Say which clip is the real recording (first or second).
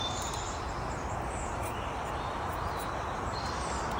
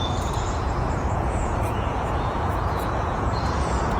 first